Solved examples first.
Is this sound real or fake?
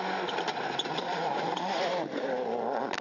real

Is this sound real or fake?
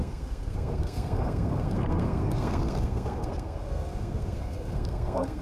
fake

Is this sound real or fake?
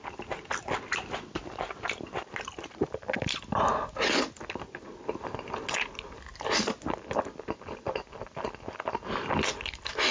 real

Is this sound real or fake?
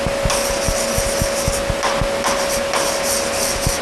real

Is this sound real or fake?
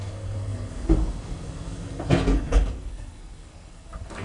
fake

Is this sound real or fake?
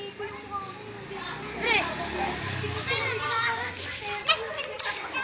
real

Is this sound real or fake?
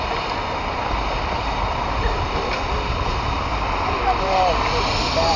real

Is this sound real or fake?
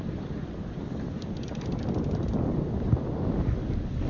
real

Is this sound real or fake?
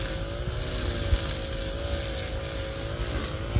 real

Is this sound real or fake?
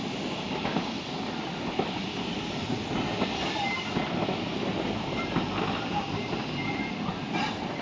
real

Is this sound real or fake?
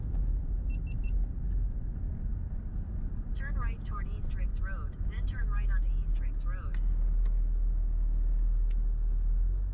real